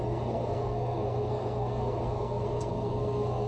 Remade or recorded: remade